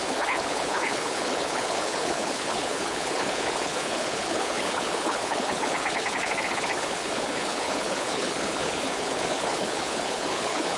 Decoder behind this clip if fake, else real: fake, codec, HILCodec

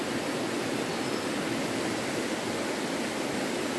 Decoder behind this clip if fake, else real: real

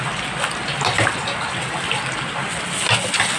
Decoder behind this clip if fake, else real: real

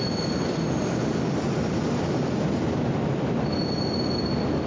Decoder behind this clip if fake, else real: real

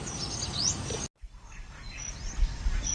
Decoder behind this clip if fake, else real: real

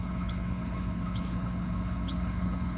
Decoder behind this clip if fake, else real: fake, codec, HILCodec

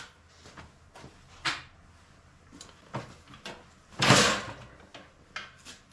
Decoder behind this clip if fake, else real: real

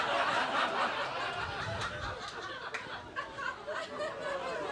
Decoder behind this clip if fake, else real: real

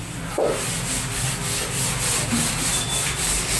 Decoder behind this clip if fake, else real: real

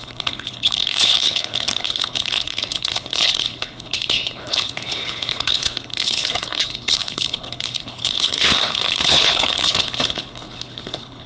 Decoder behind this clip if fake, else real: fake, codec, HILCodec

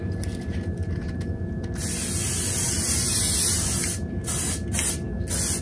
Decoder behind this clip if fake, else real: real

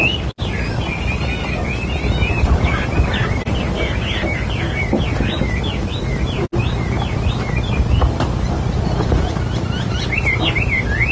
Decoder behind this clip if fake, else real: real